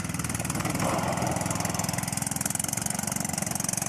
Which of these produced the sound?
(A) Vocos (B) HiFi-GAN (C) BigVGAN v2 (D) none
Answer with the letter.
D